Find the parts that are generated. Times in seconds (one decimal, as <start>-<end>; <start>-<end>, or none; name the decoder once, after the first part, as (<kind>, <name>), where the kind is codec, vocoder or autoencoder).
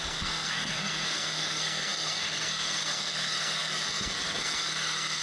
0.0-5.2 (codec, SNAC)